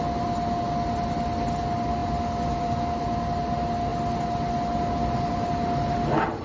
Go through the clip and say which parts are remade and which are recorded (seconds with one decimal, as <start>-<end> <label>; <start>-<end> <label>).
0.0-6.4 recorded